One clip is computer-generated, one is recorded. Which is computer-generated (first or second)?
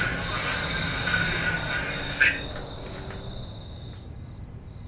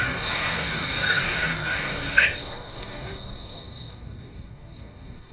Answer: second